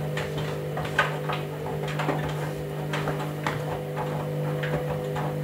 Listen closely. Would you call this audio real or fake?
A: real